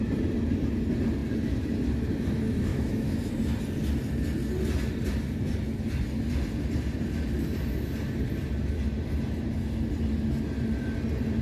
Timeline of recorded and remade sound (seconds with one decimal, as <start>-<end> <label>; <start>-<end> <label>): 0.0-2.7 recorded; 2.7-3.3 remade; 3.3-11.4 recorded